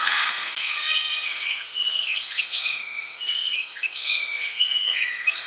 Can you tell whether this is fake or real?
fake